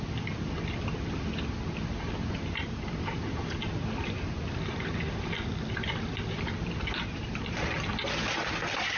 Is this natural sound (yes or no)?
yes